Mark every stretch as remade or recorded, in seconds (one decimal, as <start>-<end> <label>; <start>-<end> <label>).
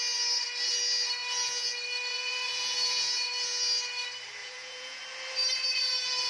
0.0-2.1 recorded; 2.1-3.3 remade; 3.3-4.4 recorded; 4.4-5.0 remade; 5.0-6.3 recorded